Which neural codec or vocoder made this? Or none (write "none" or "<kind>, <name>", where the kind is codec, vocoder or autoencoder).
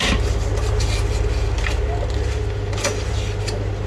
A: none